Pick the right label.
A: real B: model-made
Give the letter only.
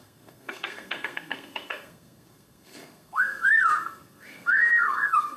B